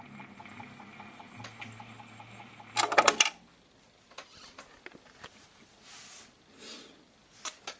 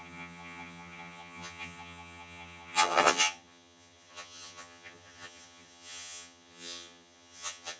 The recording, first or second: first